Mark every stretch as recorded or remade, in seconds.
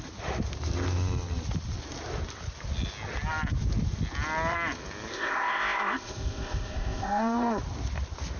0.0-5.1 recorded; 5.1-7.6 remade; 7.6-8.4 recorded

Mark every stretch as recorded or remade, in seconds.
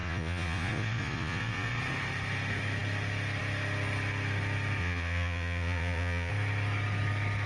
0.0-1.8 remade; 1.8-4.8 recorded; 4.8-6.3 remade; 6.3-7.5 recorded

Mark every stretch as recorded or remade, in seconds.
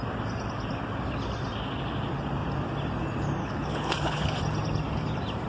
0.0-3.4 recorded; 3.4-4.4 remade; 4.4-5.5 recorded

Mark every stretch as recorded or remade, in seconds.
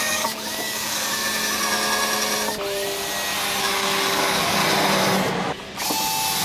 0.0-1.2 remade; 1.2-3.6 recorded; 3.6-4.6 remade; 4.6-6.4 recorded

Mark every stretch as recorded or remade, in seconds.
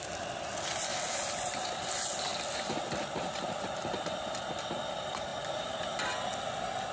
0.0-6.9 recorded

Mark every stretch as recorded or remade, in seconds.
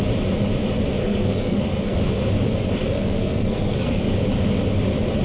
0.0-1.0 recorded; 1.0-2.0 remade; 2.0-2.8 recorded; 2.8-4.0 remade; 4.0-5.2 recorded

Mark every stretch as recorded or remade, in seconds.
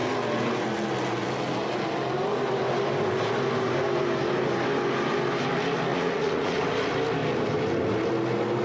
0.0-5.9 recorded; 5.9-6.6 remade; 6.6-8.6 recorded